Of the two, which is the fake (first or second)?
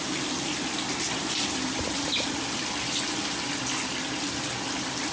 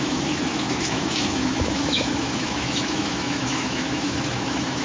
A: second